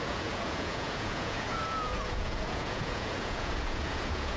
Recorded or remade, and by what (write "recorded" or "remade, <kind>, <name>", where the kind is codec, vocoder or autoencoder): remade, vocoder, Vocos